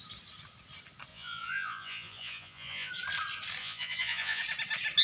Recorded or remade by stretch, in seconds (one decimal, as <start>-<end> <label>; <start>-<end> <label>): 0.0-1.1 recorded; 1.1-2.9 remade; 2.9-3.6 recorded; 3.6-4.4 remade; 4.4-5.0 recorded